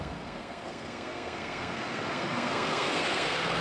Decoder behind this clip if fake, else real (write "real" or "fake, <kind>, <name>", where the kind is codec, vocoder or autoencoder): fake, codec, SNAC